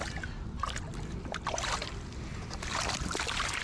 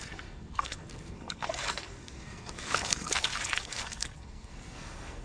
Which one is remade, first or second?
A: second